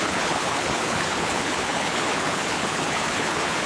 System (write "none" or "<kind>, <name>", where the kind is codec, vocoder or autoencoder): codec, HILCodec